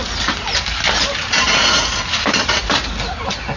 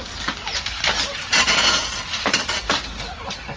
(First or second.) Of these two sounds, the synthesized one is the second